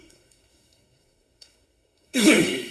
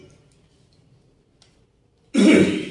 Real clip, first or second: second